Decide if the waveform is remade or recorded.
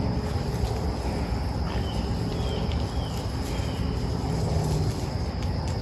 recorded